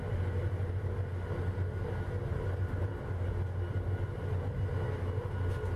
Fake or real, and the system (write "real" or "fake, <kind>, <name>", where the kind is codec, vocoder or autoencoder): real